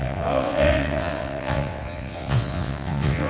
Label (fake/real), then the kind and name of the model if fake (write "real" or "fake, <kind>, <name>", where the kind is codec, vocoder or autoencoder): fake, vocoder, WaveNeXt